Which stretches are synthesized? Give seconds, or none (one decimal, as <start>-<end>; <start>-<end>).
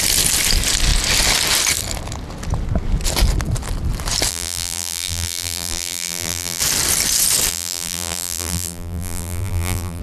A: 4.3-6.6; 7.5-10.0